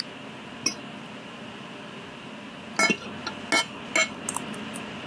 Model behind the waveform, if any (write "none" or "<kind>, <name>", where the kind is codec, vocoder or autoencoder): none